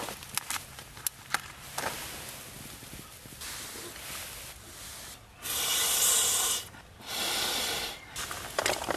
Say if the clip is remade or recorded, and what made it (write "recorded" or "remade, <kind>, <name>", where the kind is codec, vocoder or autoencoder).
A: recorded